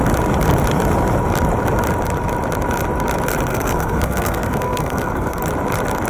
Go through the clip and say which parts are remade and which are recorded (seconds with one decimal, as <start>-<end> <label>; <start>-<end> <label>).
0.0-3.5 recorded; 3.5-5.4 remade; 5.4-6.1 recorded